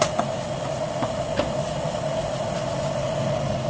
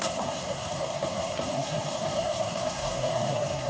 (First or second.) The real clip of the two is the first